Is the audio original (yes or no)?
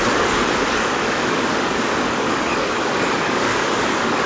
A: no